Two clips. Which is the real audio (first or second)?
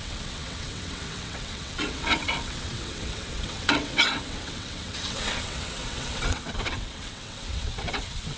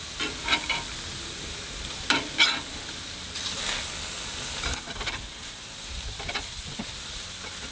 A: second